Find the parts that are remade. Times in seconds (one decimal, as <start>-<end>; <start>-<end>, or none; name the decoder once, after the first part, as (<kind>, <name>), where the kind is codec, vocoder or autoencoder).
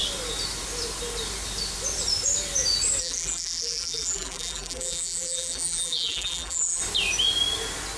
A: 3.0-6.8 (vocoder, BigVGAN v2)